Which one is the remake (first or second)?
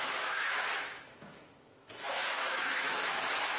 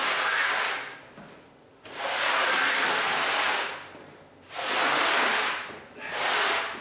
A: first